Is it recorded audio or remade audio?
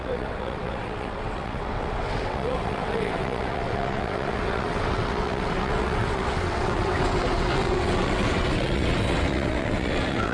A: remade